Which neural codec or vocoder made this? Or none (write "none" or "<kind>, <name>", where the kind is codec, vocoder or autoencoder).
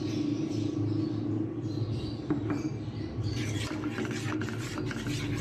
none